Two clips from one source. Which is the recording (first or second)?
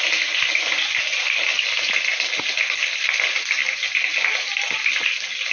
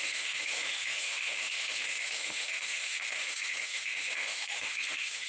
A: first